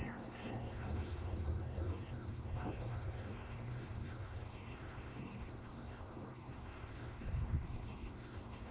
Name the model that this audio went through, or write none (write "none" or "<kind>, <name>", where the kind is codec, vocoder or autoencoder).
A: codec, SNAC